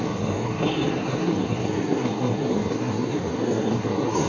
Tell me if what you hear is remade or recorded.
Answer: remade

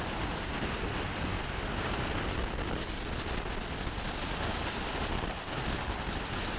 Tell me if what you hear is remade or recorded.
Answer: recorded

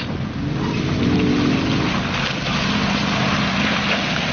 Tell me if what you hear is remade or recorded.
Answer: recorded